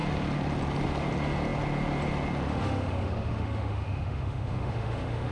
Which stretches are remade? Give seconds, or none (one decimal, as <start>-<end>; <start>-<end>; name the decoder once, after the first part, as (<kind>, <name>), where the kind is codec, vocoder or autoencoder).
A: 2.5-5.3 (autoencoder, DAC-VAE)